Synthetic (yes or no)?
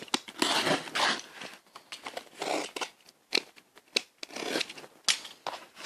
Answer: no